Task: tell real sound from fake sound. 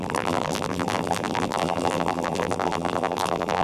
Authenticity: fake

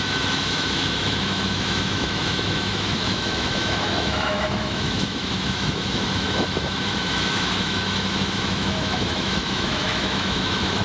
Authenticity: fake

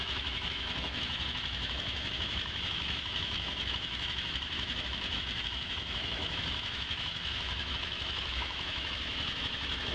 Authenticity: fake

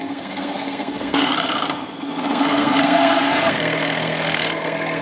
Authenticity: fake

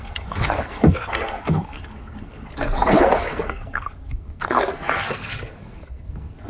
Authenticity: fake